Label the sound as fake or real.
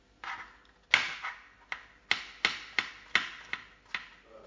real